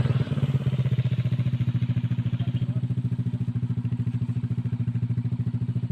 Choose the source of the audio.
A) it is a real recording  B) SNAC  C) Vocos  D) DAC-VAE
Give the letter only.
A